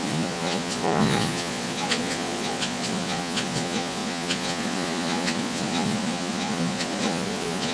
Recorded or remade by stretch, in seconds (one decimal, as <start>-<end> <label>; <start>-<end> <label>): 0.0-7.7 remade